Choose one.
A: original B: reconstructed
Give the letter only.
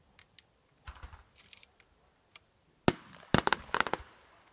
A